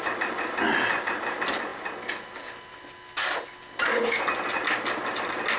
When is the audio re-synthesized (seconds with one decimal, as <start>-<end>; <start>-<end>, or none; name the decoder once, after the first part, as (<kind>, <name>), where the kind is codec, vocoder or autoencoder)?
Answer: none

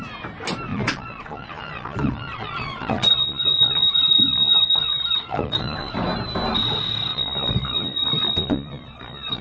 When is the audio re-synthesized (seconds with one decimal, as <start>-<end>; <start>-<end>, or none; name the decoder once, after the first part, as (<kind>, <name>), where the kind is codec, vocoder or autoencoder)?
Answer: 0.7-5.9 (vocoder, Vocos); 7.1-9.4